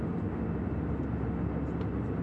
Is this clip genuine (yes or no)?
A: yes